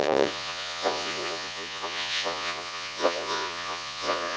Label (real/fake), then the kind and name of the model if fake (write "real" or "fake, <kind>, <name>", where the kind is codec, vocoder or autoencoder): fake, vocoder, Vocos